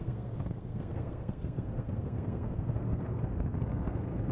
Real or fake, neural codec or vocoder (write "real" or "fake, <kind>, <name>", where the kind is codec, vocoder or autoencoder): fake, codec, SNAC